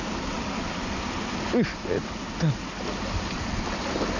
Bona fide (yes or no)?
yes